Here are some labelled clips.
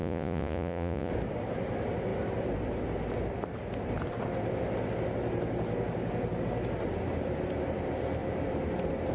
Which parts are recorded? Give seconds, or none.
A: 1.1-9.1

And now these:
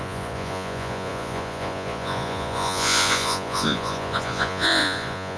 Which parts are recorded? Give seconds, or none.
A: none

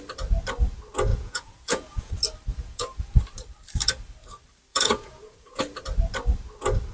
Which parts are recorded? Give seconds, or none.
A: 0.0-1.1; 2.1-2.5; 3.0-4.7; 5.6-6.9

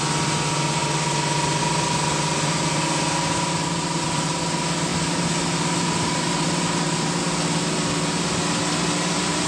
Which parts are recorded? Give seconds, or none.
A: 0.0-9.5

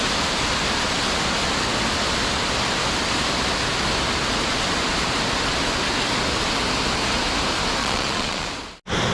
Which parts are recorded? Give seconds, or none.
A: 0.0-7.8; 8.5-9.1

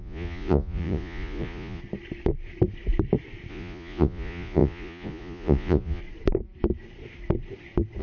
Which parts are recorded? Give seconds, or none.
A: 1.8-3.5; 6.0-8.0

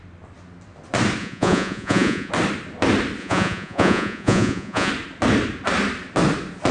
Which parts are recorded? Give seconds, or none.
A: 0.0-1.2; 2.3-3.2; 4.9-6.7